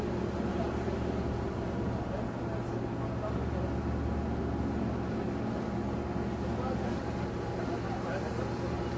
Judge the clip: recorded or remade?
recorded